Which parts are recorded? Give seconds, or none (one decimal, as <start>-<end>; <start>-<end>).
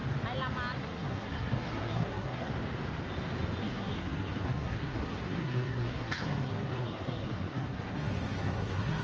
0.0-0.8; 2.5-3.6